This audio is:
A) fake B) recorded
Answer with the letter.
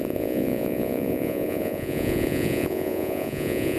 A